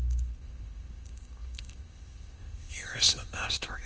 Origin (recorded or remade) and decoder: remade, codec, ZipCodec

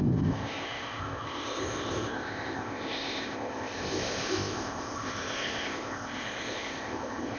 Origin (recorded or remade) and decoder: remade, codec, ZipCodec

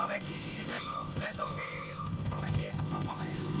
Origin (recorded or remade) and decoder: remade, codec, ZipCodec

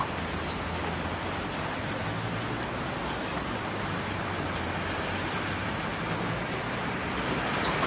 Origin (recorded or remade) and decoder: recorded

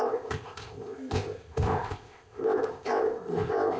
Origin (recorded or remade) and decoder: remade, codec, ZipCodec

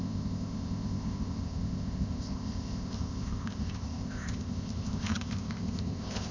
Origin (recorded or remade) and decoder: remade, codec, ZipCodec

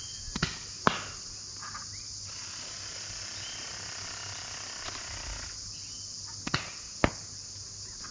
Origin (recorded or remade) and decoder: recorded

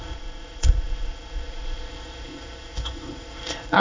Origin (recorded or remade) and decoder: remade, codec, ZipCodec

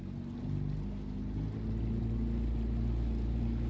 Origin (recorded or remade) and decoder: recorded